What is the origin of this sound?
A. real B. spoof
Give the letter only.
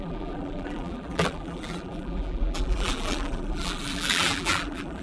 B